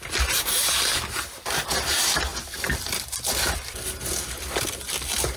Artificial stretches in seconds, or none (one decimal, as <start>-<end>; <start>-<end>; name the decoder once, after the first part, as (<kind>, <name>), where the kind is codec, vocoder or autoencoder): 2.3-5.4 (vocoder, BigVGAN v2)